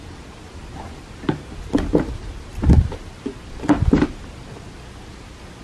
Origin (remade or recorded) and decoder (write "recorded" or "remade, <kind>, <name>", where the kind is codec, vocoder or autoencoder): recorded